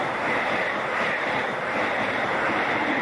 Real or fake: fake